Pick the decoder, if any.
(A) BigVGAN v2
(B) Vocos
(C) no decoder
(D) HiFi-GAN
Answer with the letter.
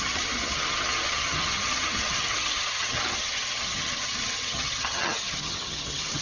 D